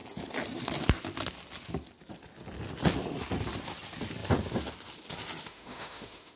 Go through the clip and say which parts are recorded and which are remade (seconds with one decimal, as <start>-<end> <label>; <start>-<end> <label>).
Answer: 0.0-5.5 recorded; 5.5-6.4 remade